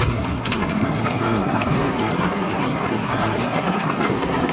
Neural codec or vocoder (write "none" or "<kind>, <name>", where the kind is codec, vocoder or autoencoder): codec, SNAC